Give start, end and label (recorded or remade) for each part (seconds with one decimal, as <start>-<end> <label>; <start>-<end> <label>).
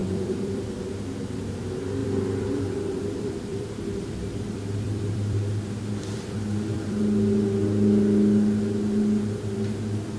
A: 0.0-0.9 remade; 0.9-2.0 recorded; 2.0-7.0 remade; 7.0-10.2 recorded